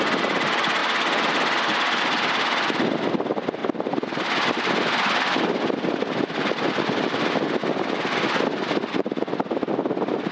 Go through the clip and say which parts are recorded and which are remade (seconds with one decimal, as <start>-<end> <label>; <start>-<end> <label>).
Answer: 0.0-10.3 recorded